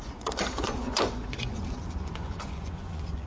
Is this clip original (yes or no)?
no